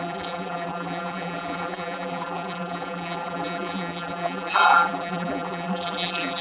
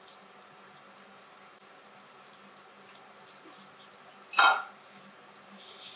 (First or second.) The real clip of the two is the second